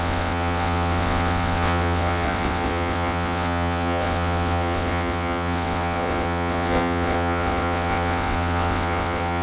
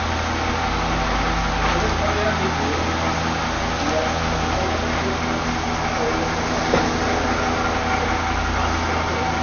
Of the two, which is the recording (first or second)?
second